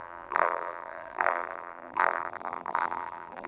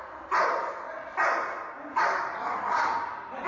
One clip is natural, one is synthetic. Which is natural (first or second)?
second